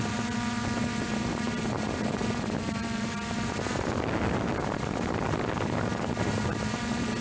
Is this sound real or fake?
real